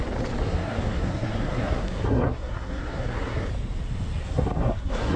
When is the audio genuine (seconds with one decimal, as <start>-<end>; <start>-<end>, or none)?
0.0-0.4; 3.5-4.2